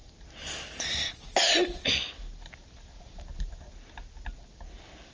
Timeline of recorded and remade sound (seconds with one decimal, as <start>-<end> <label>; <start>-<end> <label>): 0.0-5.1 recorded